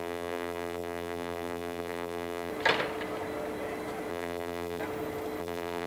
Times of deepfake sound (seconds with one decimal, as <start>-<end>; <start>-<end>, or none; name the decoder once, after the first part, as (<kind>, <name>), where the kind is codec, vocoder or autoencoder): 0.0-2.5 (vocoder, BigVGAN v2); 4.1-4.8; 5.4-5.9

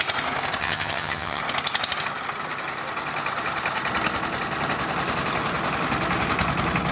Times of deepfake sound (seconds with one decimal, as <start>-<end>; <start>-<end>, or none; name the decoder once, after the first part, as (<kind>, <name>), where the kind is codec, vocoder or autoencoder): 0.6-1.4 (vocoder, HiFi-GAN)

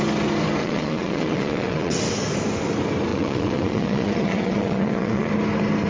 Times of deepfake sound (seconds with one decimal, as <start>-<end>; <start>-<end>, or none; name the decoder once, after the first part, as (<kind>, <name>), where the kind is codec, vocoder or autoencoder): 0.6-2.0 (vocoder, WaveNeXt); 3.1-5.3